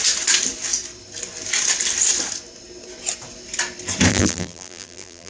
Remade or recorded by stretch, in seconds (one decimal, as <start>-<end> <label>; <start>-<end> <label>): 0.0-4.1 recorded; 4.1-5.3 remade